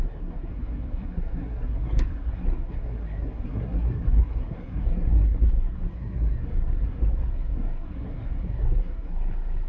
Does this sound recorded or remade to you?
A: remade